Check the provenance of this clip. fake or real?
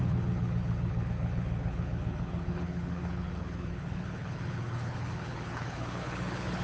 fake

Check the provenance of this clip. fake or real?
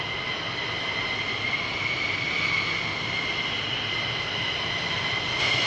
real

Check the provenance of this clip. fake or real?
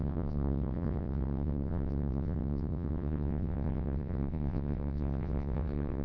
fake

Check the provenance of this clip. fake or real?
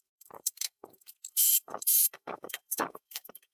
fake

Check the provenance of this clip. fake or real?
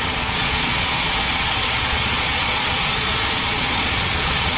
fake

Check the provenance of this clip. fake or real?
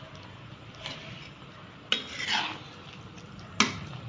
real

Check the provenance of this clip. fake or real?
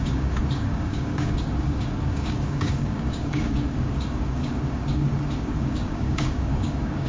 fake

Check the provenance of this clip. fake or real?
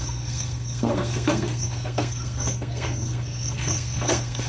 fake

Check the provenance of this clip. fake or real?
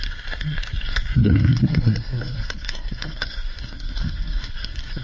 fake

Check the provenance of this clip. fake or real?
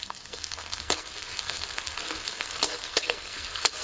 fake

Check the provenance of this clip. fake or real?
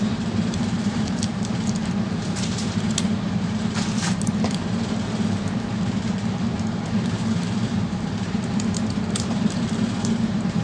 fake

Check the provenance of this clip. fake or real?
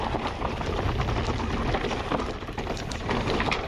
real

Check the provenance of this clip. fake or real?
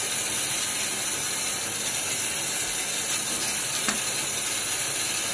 real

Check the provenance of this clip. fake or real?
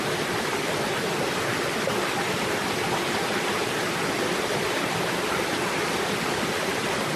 fake